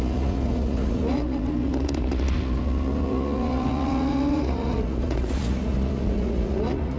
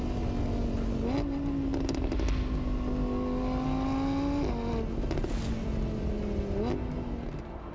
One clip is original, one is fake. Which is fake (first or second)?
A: first